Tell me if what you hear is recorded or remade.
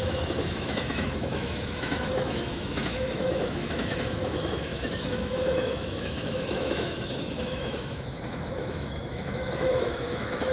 remade